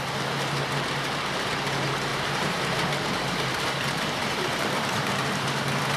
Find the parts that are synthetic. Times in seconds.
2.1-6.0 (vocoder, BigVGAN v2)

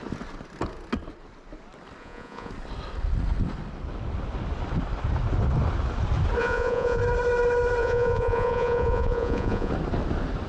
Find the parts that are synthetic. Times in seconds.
2.0-2.5 (vocoder, Vocos); 6.4-7.0; 7.8-9.7

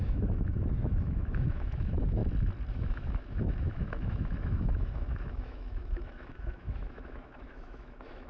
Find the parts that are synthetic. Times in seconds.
0.0-2.2 (autoencoder, DAC-VAE); 2.7-8.3

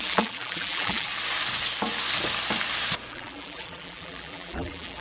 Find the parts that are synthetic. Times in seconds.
0.0-1.1 (vocoder, BigVGAN v2); 3.1-5.0